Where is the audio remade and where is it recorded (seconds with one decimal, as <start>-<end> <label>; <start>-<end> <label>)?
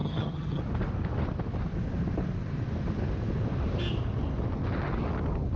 0.0-0.6 remade; 0.6-5.6 recorded